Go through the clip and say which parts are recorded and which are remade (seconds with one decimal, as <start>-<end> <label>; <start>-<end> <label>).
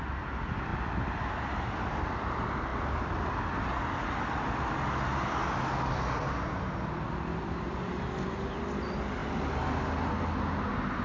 0.0-11.0 recorded